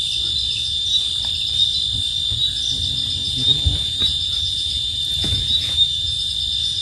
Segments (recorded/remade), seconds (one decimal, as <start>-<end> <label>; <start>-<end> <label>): 0.0-0.6 recorded; 0.6-1.1 remade; 1.1-3.2 recorded; 3.2-6.3 remade; 6.3-6.8 recorded